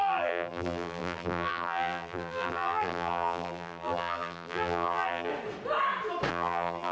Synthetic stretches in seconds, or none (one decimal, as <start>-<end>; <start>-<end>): 0.0-5.3; 6.3-6.9